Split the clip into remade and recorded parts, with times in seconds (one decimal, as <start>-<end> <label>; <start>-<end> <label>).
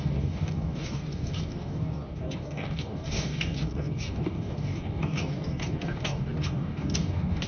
0.0-7.5 remade